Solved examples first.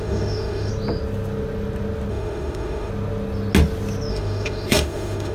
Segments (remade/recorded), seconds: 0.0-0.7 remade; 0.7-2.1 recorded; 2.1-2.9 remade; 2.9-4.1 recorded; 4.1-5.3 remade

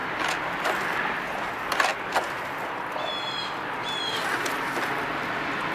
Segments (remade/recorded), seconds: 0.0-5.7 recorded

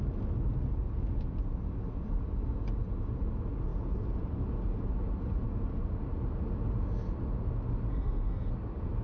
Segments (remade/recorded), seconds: 0.0-7.9 recorded; 7.9-8.5 remade; 8.5-9.0 recorded